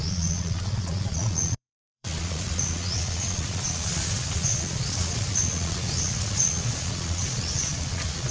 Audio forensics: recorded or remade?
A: remade